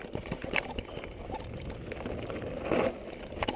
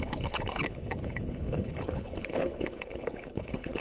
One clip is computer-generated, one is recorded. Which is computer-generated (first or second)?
second